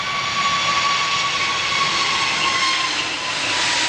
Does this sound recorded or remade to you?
recorded